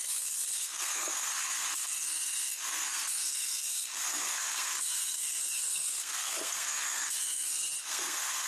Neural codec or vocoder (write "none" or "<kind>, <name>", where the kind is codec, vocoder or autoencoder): codec, SNAC